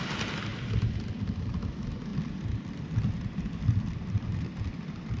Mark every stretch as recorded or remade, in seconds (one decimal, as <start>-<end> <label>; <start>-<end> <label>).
0.0-5.2 recorded